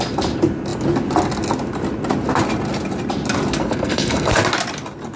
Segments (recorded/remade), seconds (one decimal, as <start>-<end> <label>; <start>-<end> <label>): 0.0-3.6 recorded; 3.6-4.3 remade; 4.3-5.2 recorded